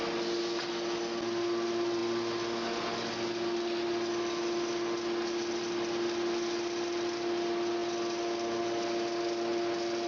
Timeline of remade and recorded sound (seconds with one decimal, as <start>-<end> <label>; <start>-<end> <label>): 0.0-10.1 recorded